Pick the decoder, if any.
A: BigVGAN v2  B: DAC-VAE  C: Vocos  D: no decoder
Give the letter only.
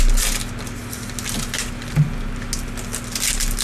D